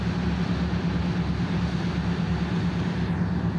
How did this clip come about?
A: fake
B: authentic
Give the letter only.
B